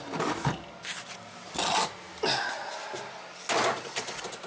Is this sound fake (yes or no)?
no